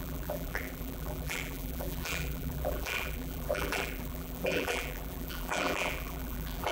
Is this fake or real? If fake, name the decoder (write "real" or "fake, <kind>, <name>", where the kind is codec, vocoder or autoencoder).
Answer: fake, vocoder, BigVGAN v2